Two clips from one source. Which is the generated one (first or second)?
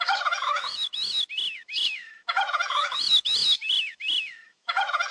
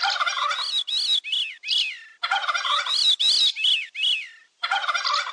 first